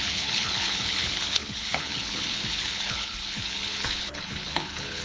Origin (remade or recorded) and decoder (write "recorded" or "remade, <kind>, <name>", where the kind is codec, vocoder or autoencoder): remade, codec, HILCodec